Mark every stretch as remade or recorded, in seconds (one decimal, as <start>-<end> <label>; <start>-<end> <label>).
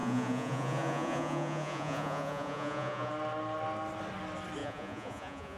0.0-3.1 remade; 3.1-4.6 recorded; 4.6-5.6 remade